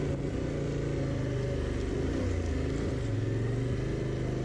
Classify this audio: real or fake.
real